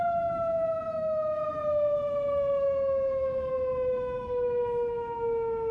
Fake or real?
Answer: fake